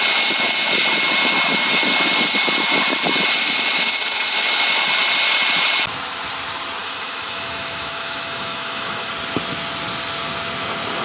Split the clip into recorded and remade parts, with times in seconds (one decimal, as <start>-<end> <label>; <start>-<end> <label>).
0.0-6.8 recorded; 6.8-9.1 remade; 9.1-11.0 recorded